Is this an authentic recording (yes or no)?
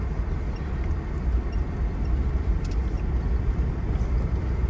yes